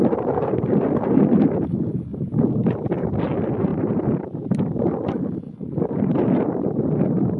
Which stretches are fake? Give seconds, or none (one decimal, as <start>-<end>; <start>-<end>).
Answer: none